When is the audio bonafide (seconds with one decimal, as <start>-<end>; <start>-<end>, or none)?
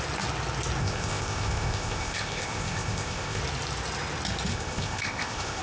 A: 0.0-0.8; 3.4-4.5